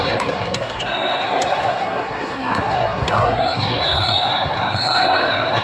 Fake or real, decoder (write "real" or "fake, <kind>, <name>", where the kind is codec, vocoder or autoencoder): fake, codec, SNAC